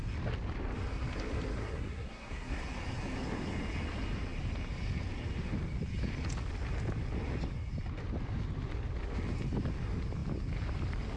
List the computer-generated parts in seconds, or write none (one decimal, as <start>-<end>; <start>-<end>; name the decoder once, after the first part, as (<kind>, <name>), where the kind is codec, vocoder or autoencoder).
1.6-2.6 (codec, SNAC)